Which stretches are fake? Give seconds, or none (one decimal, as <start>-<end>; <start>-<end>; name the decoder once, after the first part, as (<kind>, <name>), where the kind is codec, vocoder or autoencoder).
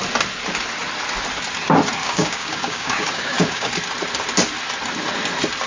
2.0-3.7 (codec, DAC)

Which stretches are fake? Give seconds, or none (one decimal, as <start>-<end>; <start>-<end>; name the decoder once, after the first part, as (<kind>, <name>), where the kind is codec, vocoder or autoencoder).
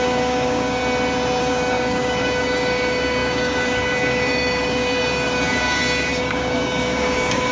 0.0-0.8 (codec, DAC); 1.4-7.5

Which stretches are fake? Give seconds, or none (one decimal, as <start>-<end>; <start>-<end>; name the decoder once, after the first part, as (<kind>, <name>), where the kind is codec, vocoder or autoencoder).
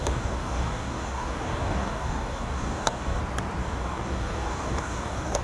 0.0-3.2 (codec, DAC); 3.6-5.4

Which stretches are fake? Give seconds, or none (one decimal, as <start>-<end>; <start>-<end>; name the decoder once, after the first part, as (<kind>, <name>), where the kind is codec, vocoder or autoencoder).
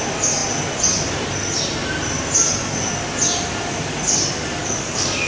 4.6-5.3 (codec, DAC)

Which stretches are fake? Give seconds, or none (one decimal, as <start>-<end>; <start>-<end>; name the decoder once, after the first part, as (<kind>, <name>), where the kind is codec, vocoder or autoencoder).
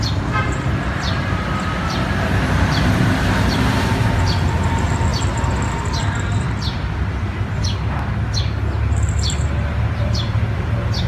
none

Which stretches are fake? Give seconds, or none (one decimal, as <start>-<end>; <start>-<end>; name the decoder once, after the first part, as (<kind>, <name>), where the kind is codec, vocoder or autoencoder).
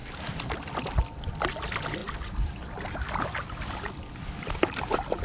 none